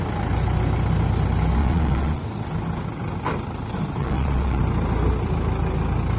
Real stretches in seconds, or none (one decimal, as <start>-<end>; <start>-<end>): 0.0-1.6; 2.2-4.0; 4.6-6.2